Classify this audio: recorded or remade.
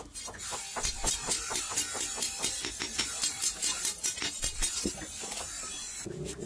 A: recorded